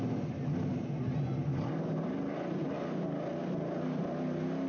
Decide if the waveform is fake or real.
real